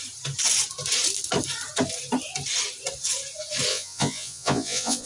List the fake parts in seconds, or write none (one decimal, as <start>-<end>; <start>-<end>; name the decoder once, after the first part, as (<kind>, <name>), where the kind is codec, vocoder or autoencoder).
3.7-5.1 (vocoder, Vocos)